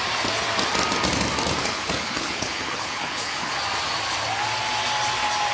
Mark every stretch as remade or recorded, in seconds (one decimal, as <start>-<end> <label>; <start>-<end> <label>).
0.0-1.6 recorded; 1.6-3.5 remade; 3.5-5.5 recorded